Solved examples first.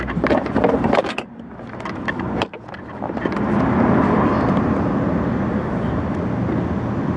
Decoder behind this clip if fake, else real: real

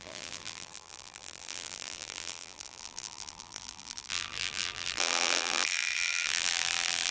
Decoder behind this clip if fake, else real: fake, vocoder, BigVGAN v2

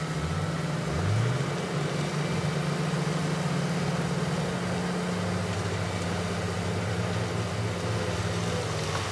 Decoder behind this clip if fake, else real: real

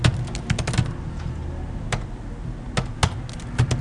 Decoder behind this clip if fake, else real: real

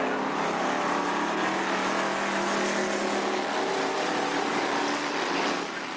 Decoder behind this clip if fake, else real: real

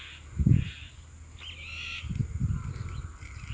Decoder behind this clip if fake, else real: real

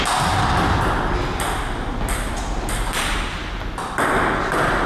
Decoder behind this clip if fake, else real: real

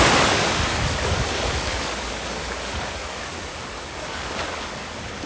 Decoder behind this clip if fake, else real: fake, codec, DAC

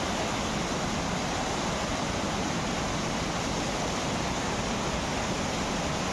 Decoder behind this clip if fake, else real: real